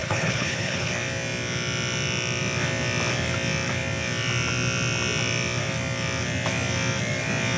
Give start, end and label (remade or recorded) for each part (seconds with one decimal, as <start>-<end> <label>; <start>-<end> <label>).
0.0-0.9 remade; 0.9-7.6 recorded